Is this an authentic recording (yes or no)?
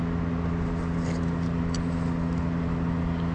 yes